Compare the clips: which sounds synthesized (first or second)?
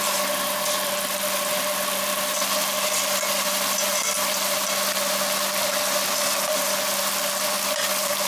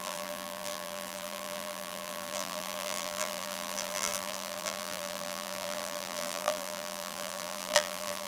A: second